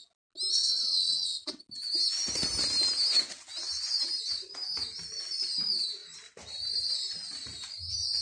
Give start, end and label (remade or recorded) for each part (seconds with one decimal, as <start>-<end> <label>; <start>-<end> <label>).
0.0-0.5 recorded; 0.5-1.6 remade; 1.6-8.2 recorded